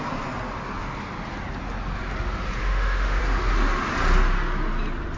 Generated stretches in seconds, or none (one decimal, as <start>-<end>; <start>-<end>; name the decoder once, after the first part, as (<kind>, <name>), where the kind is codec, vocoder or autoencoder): 2.6-3.2 (autoencoder, DAC-VAE)